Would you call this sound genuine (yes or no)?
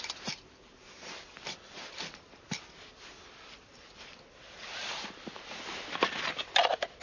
yes